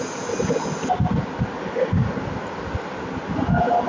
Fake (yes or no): no